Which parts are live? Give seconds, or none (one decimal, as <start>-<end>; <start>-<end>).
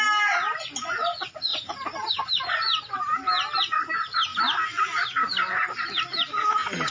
0.0-6.9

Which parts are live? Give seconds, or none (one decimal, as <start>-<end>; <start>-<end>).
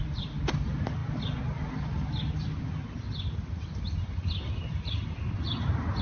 0.0-6.0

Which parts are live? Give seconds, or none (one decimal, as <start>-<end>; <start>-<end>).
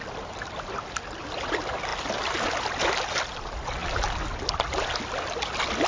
0.0-5.9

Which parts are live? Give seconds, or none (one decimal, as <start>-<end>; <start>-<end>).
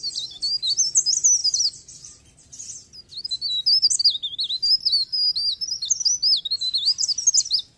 0.0-7.8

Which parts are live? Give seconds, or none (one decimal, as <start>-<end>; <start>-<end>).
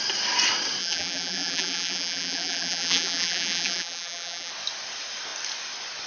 0.0-0.8; 4.5-6.1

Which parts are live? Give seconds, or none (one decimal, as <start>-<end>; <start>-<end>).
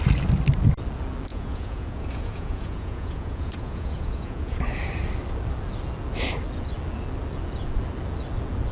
0.0-1.3; 4.6-8.7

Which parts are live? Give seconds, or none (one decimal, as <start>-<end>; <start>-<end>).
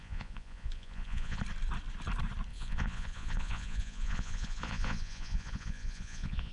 1.4-2.5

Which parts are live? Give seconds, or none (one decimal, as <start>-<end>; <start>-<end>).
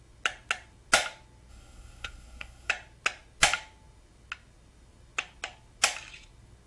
0.0-1.5; 2.7-6.7